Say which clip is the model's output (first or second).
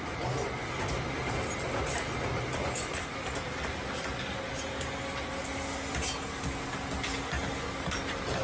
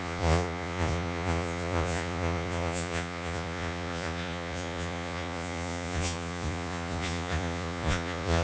second